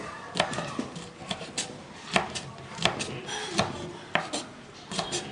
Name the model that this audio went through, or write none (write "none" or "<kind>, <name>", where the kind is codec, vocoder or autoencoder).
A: none